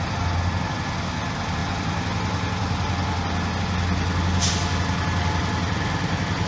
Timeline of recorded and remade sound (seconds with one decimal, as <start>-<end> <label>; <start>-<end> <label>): 0.0-6.5 recorded

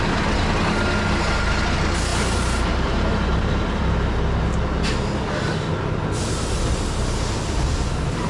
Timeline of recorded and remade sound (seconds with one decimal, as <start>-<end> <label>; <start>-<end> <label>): 0.0-2.1 recorded; 2.1-3.8 remade; 3.8-8.3 recorded

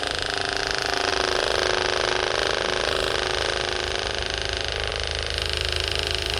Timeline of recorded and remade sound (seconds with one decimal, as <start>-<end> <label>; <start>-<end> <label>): 0.0-3.5 recorded; 3.5-4.2 remade; 4.2-4.9 recorded; 4.9-6.4 remade

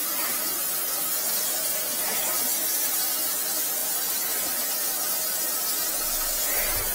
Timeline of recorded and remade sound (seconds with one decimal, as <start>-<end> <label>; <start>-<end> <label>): 0.0-6.9 recorded

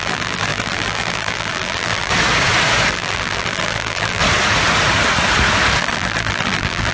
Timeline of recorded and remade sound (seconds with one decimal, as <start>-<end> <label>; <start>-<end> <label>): 0.0-2.1 remade; 2.1-2.9 recorded; 2.9-4.2 remade; 4.2-5.8 recorded; 5.8-6.9 remade

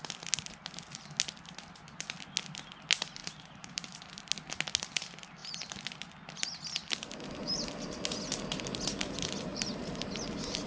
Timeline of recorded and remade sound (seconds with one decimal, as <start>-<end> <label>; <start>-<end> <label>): 0.0-3.2 recorded; 3.2-4.0 remade; 4.0-9.5 recorded; 9.5-10.7 remade

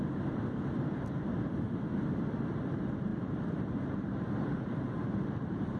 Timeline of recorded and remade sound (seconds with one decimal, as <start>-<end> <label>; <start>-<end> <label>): 0.0-3.1 recorded; 3.1-5.8 remade

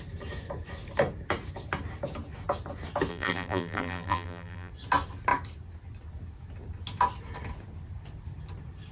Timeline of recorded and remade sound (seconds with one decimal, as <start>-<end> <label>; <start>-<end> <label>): 0.0-3.1 recorded; 3.1-4.7 remade; 4.7-8.9 recorded